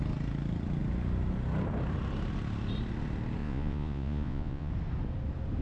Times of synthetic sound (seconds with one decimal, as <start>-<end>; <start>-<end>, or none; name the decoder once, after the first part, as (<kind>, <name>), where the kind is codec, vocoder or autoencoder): 3.4-4.7 (vocoder, Vocos)